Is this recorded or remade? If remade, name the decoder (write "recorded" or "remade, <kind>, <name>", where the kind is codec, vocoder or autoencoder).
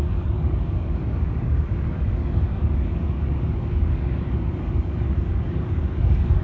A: remade, codec, DAC